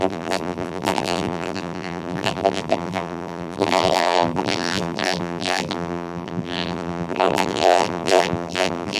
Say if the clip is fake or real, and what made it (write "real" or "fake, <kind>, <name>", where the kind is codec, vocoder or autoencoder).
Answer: fake, vocoder, BigVGAN v2